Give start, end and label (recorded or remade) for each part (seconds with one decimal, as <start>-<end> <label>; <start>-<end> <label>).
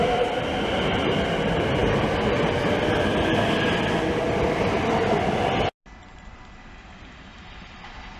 0.0-1.8 remade; 1.8-6.0 recorded; 6.0-8.2 remade